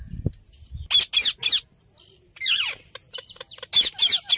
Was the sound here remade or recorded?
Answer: recorded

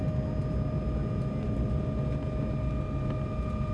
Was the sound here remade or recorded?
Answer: recorded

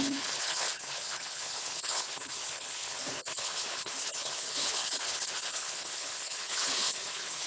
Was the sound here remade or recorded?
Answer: remade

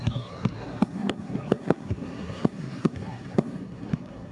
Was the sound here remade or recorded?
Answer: remade